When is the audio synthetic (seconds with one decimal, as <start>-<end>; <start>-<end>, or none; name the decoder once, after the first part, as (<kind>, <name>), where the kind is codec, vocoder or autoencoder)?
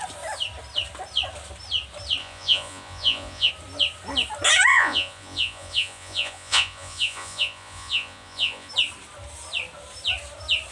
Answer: 2.2-3.5 (vocoder, Vocos); 4.7-8.7